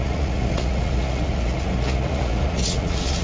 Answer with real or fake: fake